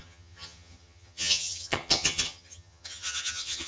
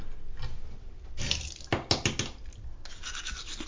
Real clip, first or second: second